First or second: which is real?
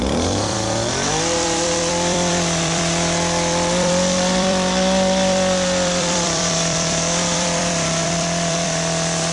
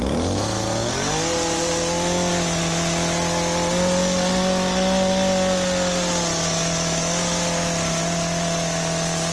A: second